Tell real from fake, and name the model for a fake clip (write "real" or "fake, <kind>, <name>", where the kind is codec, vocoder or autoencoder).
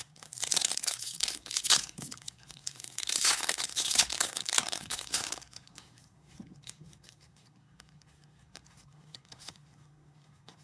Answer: fake, codec, SNAC